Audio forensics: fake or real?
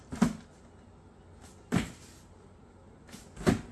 real